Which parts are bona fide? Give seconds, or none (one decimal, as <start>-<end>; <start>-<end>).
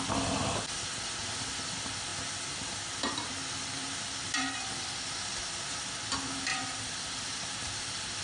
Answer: 0.0-2.1; 5.5-6.5